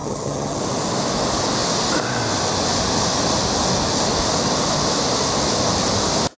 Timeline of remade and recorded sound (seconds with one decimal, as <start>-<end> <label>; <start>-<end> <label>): 0.0-0.6 remade; 0.6-6.4 recorded